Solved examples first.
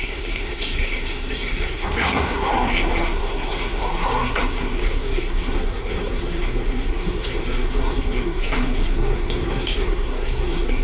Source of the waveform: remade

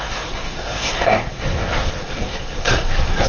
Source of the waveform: remade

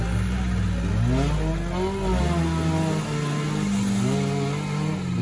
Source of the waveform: recorded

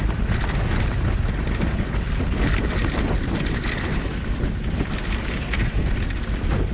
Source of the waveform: recorded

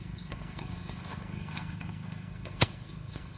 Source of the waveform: remade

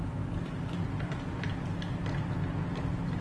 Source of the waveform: recorded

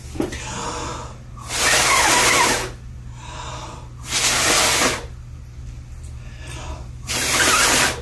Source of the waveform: recorded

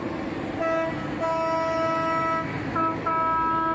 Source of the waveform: recorded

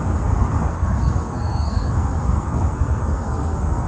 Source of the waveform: remade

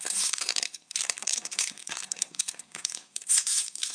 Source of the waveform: remade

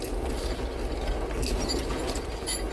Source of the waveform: recorded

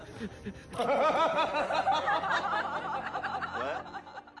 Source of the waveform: recorded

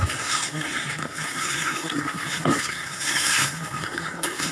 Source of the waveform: remade